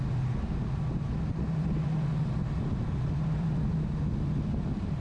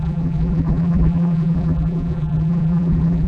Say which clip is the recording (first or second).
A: first